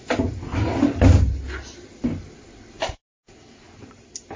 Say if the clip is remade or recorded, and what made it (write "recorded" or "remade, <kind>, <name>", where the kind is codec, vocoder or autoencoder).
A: recorded